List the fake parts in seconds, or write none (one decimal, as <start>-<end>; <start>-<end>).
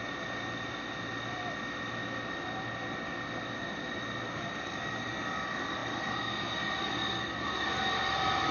none